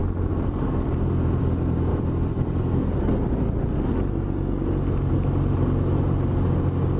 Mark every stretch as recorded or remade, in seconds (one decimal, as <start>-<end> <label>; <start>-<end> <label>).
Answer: 0.0-1.9 recorded; 1.9-3.1 remade; 3.1-7.0 recorded